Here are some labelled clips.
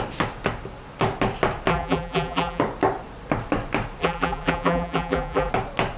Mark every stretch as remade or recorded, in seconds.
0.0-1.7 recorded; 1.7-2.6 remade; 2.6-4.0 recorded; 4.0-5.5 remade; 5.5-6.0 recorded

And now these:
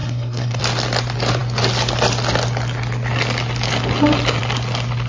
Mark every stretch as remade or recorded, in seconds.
0.0-0.6 remade; 0.6-5.1 recorded

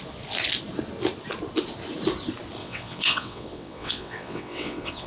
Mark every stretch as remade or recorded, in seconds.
0.0-2.6 recorded; 2.6-5.1 remade

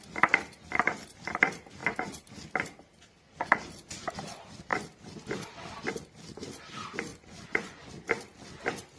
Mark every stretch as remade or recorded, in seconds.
0.0-7.1 recorded; 7.1-7.9 remade; 7.9-9.0 recorded

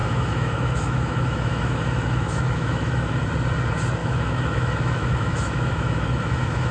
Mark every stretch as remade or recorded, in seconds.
0.0-3.2 remade; 3.2-4.0 recorded; 4.0-6.7 remade

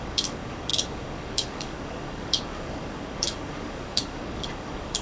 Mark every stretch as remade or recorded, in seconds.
0.0-5.0 remade

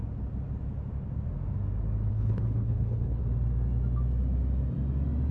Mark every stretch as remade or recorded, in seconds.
0.0-2.1 recorded; 2.1-3.2 remade; 3.2-5.3 recorded

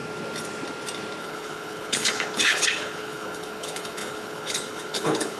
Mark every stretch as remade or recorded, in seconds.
0.0-1.2 recorded; 1.2-5.4 remade